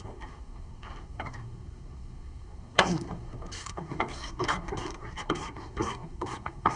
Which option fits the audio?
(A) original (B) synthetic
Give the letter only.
B